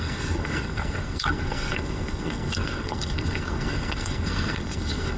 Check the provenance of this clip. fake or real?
fake